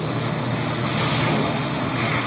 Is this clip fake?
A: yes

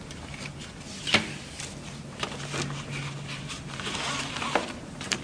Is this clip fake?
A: no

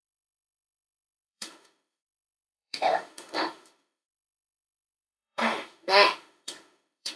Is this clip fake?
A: yes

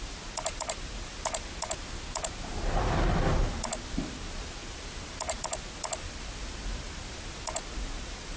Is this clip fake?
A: no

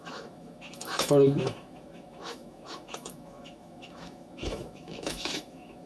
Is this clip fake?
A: yes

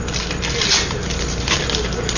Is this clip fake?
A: no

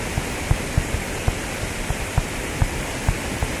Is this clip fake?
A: no